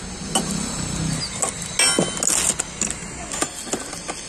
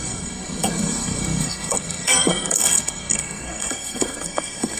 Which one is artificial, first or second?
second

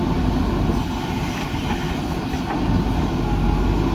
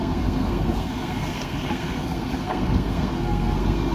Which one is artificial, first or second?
second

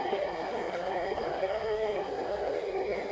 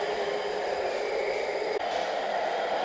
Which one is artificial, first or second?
first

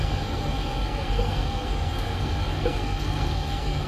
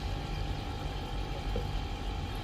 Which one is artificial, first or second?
first